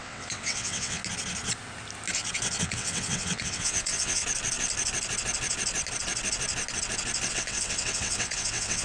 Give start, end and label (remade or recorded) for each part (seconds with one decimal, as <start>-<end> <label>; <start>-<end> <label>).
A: 0.0-1.0 remade; 1.0-2.6 recorded; 2.6-4.2 remade; 4.2-7.3 recorded; 7.3-8.8 remade

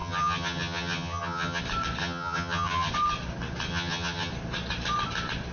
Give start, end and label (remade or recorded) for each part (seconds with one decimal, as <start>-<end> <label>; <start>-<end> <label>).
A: 0.0-1.6 remade; 1.6-2.0 recorded; 2.0-2.9 remade; 2.9-3.7 recorded; 3.7-4.3 remade; 4.3-5.5 recorded

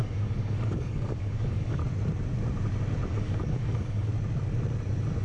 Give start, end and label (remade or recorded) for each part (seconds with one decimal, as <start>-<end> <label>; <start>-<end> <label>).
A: 0.0-1.8 remade; 1.8-3.1 recorded; 3.1-4.1 remade; 4.1-5.2 recorded

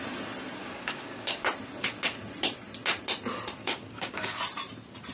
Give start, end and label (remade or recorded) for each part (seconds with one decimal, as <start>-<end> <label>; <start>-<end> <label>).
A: 0.0-0.6 recorded; 0.6-1.4 remade; 1.4-3.6 recorded; 3.6-4.4 remade; 4.4-5.1 recorded

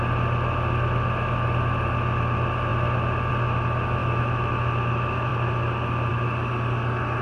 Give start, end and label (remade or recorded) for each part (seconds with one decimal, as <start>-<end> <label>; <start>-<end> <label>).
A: 0.0-4.0 recorded; 4.0-4.5 remade; 4.5-7.2 recorded